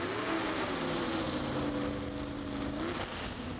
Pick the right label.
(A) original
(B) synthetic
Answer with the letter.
A